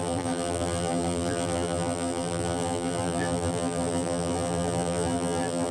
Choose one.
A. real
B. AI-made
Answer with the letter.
B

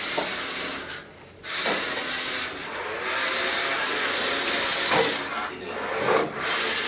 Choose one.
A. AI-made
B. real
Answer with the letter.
B